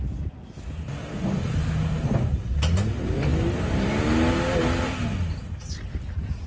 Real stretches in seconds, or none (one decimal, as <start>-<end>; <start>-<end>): 0.0-6.5